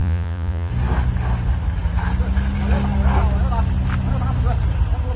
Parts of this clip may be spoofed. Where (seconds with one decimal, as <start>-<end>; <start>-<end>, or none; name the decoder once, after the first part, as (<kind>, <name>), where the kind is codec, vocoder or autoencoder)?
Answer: 0.0-0.7 (vocoder, Vocos)